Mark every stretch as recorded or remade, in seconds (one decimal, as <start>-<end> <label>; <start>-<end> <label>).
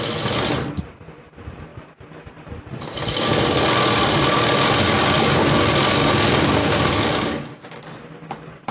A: 0.0-6.6 recorded; 6.6-7.8 remade; 7.8-8.7 recorded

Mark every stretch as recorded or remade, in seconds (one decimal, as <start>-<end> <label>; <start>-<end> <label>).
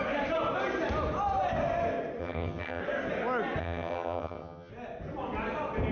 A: 0.0-2.2 recorded; 2.2-2.8 remade; 2.8-3.6 recorded; 3.6-4.7 remade; 4.7-5.9 recorded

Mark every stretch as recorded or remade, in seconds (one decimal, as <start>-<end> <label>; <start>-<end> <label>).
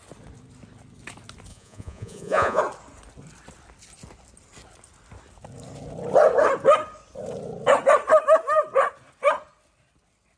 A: 0.0-1.5 recorded; 1.5-2.6 remade; 2.6-10.4 recorded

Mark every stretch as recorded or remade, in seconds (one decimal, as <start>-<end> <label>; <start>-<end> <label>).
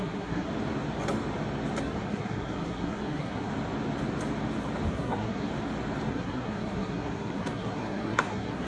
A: 0.0-0.5 remade; 0.5-1.8 recorded; 1.8-3.5 remade; 3.5-4.9 recorded; 4.9-5.5 remade; 5.5-6.1 recorded; 6.1-8.7 remade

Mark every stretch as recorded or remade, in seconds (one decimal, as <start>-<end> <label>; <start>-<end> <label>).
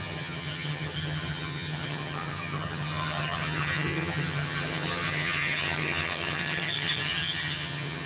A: 0.0-8.1 remade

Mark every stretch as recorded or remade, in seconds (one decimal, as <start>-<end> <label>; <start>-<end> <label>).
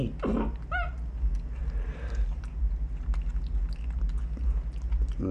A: 0.0-1.6 recorded; 1.6-2.4 remade; 2.4-5.3 recorded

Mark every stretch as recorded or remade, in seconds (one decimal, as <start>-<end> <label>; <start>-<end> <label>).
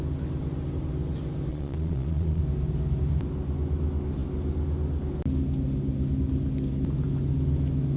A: 0.0-1.5 recorded; 1.5-2.4 remade; 2.4-8.0 recorded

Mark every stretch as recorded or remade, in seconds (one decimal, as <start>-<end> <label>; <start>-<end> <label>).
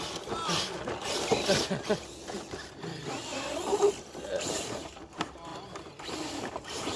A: 0.0-3.3 recorded; 3.3-5.0 remade; 5.0-5.5 recorded; 5.5-6.4 remade; 6.4-7.0 recorded